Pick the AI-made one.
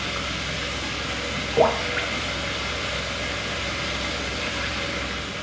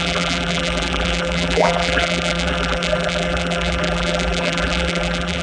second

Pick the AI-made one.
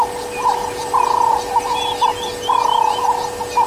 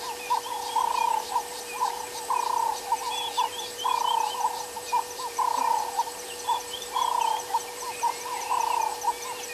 second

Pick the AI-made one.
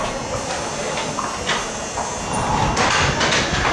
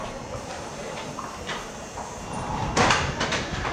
second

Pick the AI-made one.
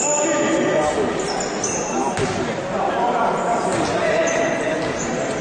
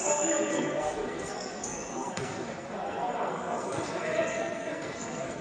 second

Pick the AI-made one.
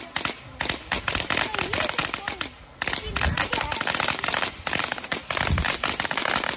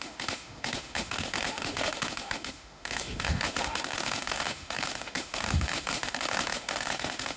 second